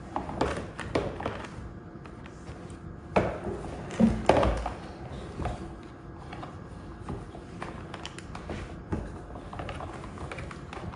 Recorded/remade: recorded